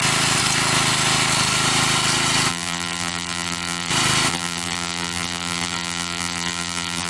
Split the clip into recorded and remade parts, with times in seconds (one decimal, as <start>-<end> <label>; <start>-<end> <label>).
0.0-2.5 recorded; 2.5-3.9 remade; 3.9-4.3 recorded; 4.3-7.1 remade